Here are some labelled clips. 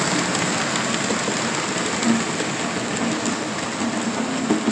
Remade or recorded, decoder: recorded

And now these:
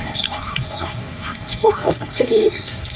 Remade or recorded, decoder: remade, codec, SNAC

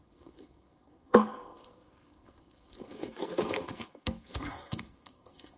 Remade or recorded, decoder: remade, codec, SNAC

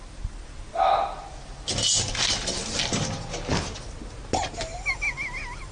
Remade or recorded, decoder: recorded